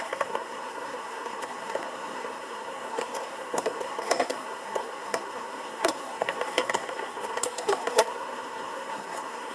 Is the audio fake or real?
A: fake